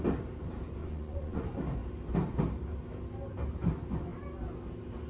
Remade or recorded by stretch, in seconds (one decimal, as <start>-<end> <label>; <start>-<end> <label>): 0.0-0.8 recorded; 0.8-1.4 remade; 1.4-5.1 recorded